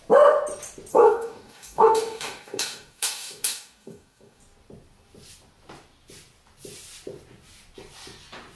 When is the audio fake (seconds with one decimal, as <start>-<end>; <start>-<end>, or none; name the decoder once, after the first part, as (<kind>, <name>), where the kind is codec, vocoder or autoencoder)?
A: 0.9-4.4 (codec, DAC)